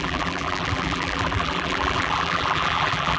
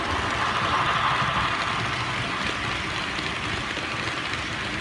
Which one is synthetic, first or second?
first